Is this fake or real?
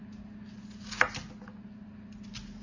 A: real